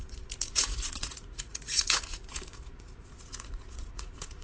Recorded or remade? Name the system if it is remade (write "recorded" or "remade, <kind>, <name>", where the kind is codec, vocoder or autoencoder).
remade, vocoder, Vocos